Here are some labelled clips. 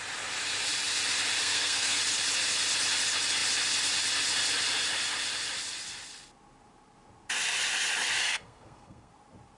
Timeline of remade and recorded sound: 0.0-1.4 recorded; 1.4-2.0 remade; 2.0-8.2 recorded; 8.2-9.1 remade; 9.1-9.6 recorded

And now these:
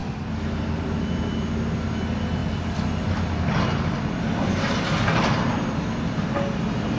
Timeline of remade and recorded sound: 0.0-7.0 recorded

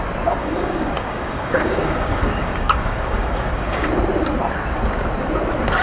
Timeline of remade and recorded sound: 0.0-0.4 recorded; 0.4-3.9 remade; 3.9-5.8 recorded

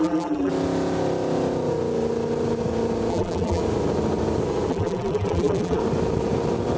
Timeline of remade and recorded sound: 0.0-0.5 remade; 0.5-3.1 recorded; 3.1-3.6 remade; 3.6-4.7 recorded; 4.7-5.8 remade; 5.8-6.8 recorded

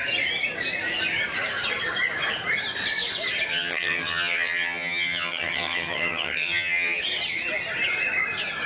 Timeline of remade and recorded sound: 0.0-3.5 recorded; 3.5-7.0 remade; 7.0-8.7 recorded

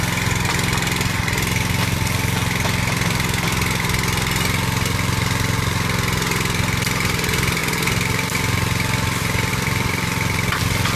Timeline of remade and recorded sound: 0.0-9.5 recorded; 9.5-11.0 remade

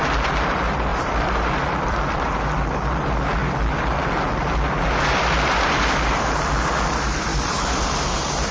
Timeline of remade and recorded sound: 0.0-0.9 recorded; 0.9-2.3 remade; 2.3-7.3 recorded; 7.3-7.9 remade; 7.9-8.5 recorded